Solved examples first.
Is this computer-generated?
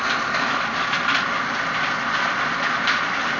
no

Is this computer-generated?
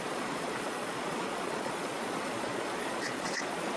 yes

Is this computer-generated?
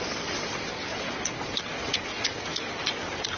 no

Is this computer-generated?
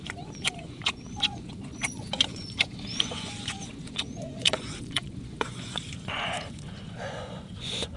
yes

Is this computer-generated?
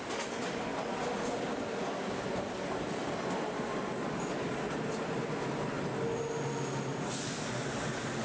no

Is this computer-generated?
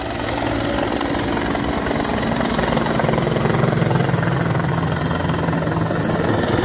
no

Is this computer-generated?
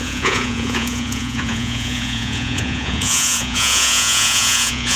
yes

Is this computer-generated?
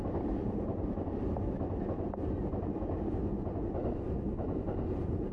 no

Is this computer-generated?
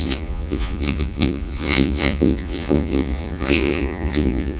yes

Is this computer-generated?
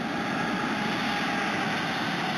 no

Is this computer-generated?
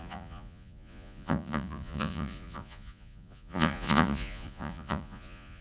yes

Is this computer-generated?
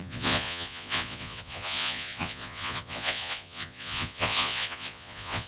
yes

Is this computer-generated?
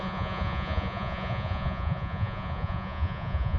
yes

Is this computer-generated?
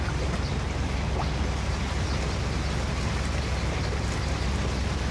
no